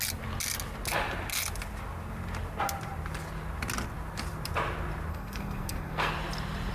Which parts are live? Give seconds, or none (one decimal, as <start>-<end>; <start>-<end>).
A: 0.0-5.1; 6.1-6.7